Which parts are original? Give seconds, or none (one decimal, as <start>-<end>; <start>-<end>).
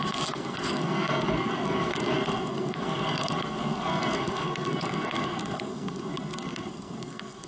none